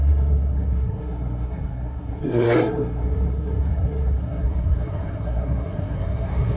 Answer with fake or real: fake